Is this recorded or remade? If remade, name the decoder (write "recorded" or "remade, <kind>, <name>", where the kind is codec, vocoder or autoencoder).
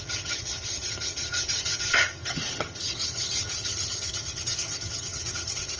remade, vocoder, HiFi-GAN